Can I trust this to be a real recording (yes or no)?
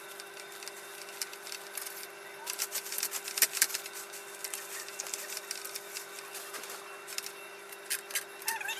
yes